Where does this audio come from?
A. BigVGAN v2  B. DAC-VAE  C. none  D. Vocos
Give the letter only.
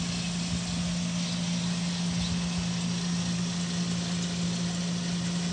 C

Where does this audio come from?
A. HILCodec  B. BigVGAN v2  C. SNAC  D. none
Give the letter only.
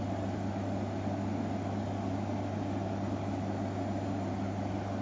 D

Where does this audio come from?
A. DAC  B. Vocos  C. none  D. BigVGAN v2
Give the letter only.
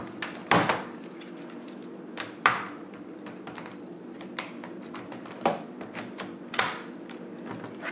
D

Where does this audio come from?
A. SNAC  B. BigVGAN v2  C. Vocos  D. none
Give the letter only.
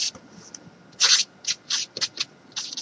D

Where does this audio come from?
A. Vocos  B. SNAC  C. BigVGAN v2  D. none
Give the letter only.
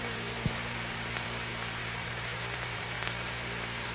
C